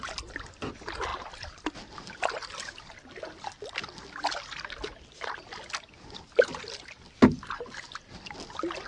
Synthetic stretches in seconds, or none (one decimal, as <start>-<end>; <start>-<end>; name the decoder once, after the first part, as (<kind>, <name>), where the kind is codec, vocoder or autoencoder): none